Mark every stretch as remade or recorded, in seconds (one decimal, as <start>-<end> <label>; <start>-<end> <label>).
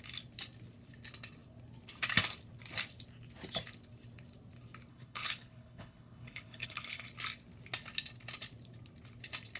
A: 0.0-4.9 recorded; 4.9-7.1 remade; 7.1-9.6 recorded